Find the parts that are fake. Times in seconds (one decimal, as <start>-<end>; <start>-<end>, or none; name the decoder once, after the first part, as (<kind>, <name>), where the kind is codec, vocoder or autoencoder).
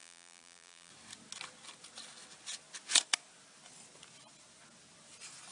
0.0-0.9 (vocoder, BigVGAN v2)